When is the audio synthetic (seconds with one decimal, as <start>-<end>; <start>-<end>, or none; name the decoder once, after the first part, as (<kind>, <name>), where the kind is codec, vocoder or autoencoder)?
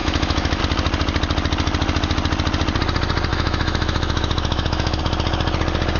0.0-0.6 (autoencoder, DAC-VAE); 3.3-5.0